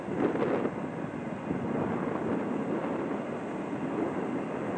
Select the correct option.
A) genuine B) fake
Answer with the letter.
A